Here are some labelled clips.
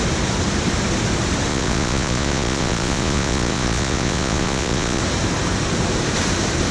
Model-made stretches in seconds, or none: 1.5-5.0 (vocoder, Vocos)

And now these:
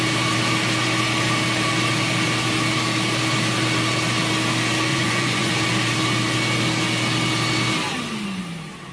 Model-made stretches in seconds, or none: 4.9-5.5 (vocoder, Vocos)

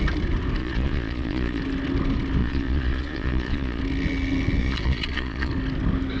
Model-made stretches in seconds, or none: 0.6-1.6 (vocoder, Vocos); 2.4-3.8; 4.6-5.5

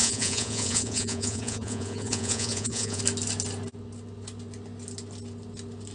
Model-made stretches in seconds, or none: 0.0-3.0 (vocoder, Vocos)

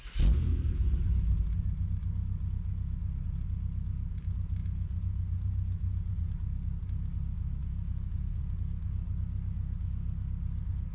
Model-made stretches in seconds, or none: 4.6-6.3 (vocoder, Vocos); 7.6-8.4

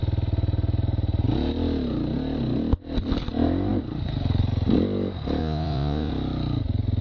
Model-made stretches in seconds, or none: 5.4-6.1 (vocoder, Vocos)

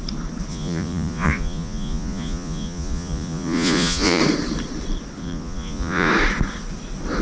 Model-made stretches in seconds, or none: 0.5-4.2 (vocoder, Vocos); 5.2-6.1